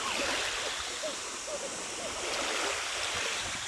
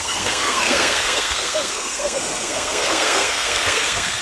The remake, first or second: second